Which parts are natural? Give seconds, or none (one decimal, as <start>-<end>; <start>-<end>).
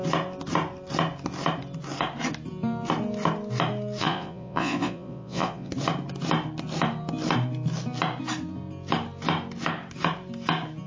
0.0-4.0; 5.7-10.9